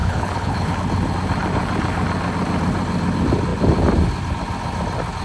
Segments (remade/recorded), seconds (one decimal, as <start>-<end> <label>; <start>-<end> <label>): 0.0-0.7 remade; 0.7-5.2 recorded